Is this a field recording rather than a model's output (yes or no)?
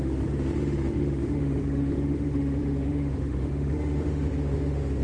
no